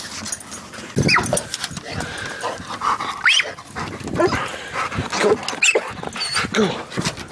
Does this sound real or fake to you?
real